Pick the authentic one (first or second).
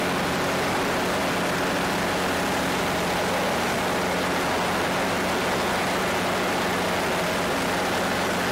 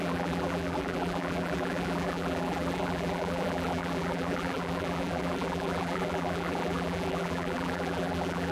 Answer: first